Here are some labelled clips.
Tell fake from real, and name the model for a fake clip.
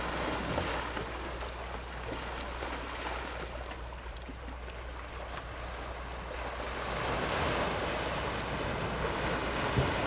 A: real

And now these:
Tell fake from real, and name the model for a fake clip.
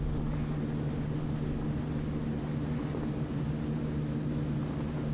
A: real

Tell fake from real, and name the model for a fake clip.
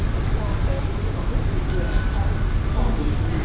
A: real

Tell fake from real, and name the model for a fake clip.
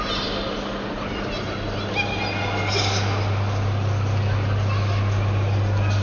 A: real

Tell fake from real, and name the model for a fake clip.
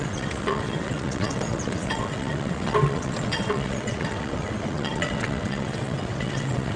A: fake, vocoder, WaveNeXt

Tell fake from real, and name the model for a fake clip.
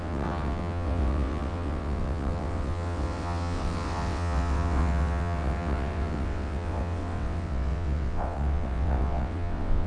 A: fake, vocoder, WaveNeXt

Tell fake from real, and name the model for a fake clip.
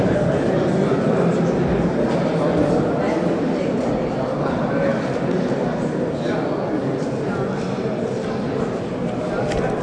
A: real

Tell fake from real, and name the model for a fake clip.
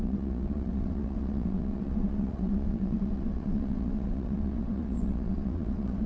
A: fake, vocoder, WaveNeXt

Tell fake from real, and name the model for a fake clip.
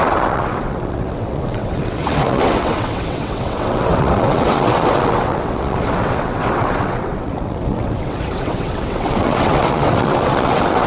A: fake, vocoder, WaveNeXt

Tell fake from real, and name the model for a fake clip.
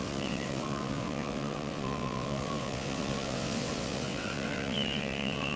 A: fake, vocoder, WaveNeXt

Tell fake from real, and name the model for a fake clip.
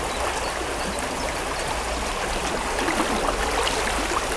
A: real